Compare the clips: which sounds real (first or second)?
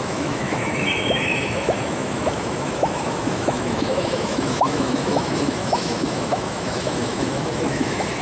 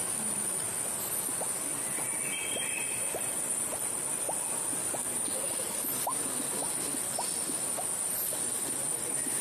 second